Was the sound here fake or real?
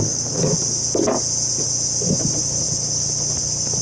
real